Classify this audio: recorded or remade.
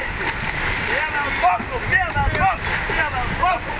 recorded